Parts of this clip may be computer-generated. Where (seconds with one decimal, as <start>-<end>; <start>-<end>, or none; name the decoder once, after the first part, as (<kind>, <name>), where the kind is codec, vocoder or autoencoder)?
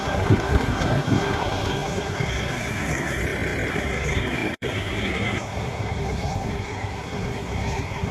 0.0-3.2 (codec, SNAC); 3.7-8.1